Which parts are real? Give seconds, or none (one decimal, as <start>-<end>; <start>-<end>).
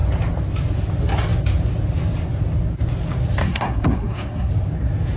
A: 0.0-3.4; 4.5-5.2